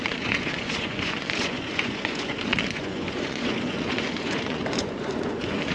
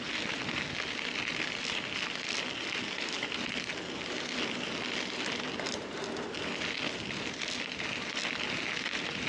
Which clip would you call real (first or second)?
second